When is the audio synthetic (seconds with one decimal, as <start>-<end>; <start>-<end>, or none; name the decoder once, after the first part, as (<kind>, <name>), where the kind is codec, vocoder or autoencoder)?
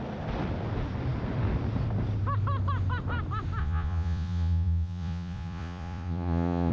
3.6-6.7 (vocoder, Vocos)